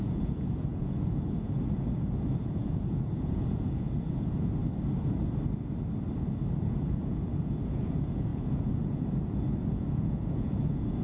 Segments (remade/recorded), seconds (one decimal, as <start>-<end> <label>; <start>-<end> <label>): 0.0-4.6 remade; 4.6-6.6 recorded; 6.6-11.0 remade